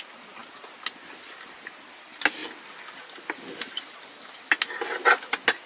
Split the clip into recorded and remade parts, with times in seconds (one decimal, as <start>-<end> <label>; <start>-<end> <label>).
0.0-5.7 recorded